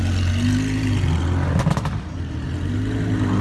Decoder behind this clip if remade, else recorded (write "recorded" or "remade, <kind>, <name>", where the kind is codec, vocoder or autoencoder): recorded